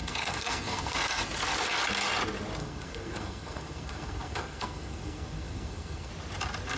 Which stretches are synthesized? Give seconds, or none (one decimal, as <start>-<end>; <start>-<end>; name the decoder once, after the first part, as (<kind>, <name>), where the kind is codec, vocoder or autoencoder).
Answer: 0.0-1.2 (codec, SNAC); 2.6-6.1